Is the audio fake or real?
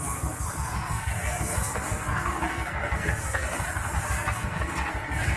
fake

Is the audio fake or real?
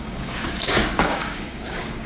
fake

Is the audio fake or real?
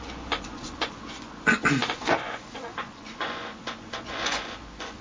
fake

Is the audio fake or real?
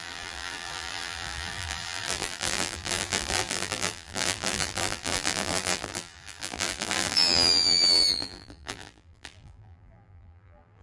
fake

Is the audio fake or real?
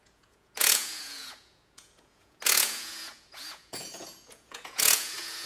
fake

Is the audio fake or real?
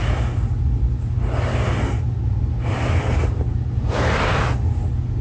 real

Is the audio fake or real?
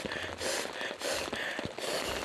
real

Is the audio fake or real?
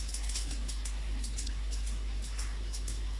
fake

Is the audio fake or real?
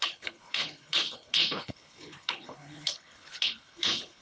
fake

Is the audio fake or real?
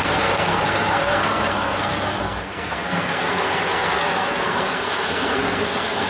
fake